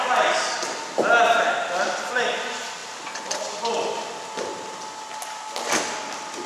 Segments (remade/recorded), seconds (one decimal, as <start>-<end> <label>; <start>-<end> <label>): 0.0-6.5 recorded